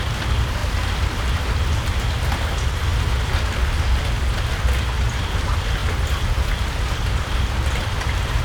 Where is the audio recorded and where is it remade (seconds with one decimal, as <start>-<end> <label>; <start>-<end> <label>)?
0.0-8.4 recorded

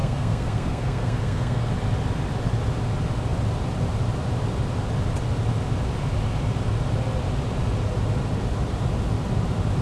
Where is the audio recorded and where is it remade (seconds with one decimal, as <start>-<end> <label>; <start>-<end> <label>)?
0.0-1.7 remade; 1.7-9.8 recorded

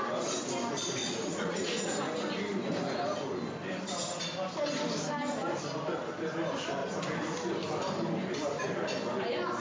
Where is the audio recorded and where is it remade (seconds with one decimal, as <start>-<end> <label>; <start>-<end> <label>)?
0.0-1.0 recorded; 1.0-1.9 remade; 1.9-9.6 recorded

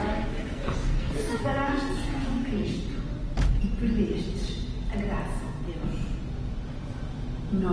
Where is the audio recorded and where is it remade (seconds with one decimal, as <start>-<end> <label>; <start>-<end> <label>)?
0.0-2.8 remade; 2.8-7.7 recorded

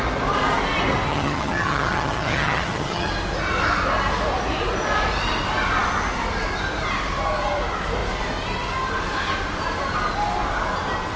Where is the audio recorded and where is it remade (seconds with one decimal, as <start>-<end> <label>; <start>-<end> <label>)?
0.0-1.1 recorded; 1.1-3.1 remade; 3.1-11.2 recorded

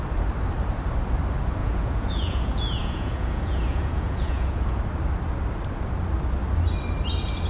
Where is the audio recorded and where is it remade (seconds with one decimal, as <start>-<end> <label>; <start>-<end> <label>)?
0.0-1.6 recorded; 1.6-4.8 remade; 4.8-7.5 recorded

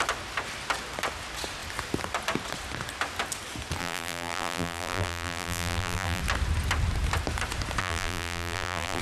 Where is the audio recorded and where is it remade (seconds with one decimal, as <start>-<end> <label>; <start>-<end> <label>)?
0.0-3.8 recorded; 3.8-6.2 remade; 6.2-7.8 recorded; 7.8-9.0 remade

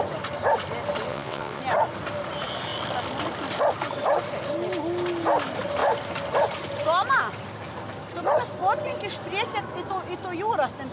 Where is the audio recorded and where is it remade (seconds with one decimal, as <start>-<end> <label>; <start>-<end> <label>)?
0.0-1.1 recorded; 1.1-1.6 remade; 1.6-10.9 recorded